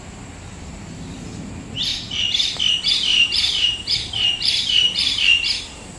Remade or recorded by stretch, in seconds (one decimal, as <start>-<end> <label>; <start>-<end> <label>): 0.0-3.1 recorded; 3.1-5.2 remade; 5.2-6.0 recorded